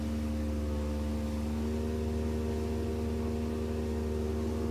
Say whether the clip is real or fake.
real